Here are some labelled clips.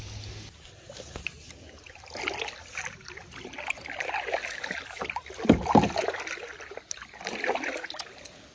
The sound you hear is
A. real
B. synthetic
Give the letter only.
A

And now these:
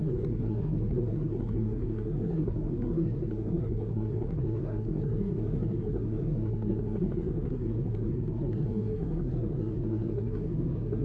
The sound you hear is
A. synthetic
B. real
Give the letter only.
A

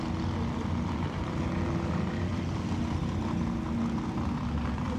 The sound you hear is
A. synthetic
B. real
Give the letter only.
B